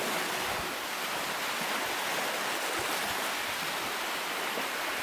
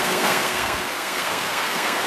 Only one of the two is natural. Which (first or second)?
first